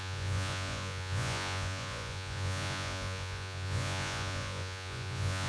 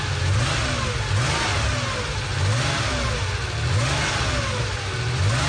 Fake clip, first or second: first